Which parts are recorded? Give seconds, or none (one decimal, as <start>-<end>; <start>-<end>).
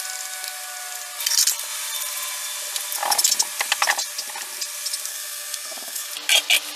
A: 0.0-5.1; 6.1-6.8